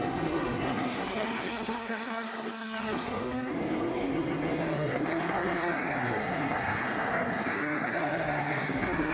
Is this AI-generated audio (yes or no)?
yes